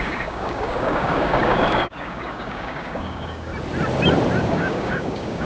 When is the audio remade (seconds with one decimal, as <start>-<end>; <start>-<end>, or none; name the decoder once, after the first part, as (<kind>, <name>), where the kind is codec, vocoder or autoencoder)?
0.0-3.5 (codec, DAC); 4.4-5.4